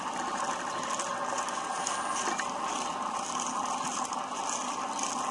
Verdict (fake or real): real